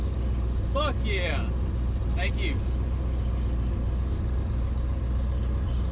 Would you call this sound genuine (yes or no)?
yes